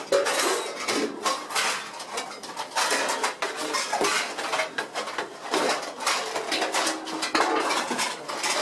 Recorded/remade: recorded